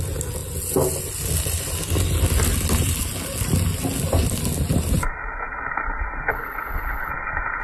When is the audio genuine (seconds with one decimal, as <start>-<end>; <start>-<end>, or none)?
0.0-6.3; 7.1-7.6